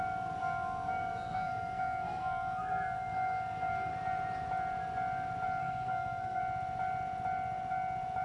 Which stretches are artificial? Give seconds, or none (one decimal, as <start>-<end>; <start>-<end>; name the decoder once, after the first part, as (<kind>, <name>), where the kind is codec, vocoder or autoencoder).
0.4-3.9 (codec, SNAC); 5.6-6.4